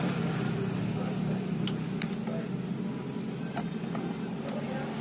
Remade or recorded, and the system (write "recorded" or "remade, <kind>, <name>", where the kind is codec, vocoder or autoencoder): recorded